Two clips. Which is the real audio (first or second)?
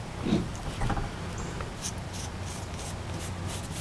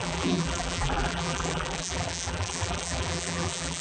first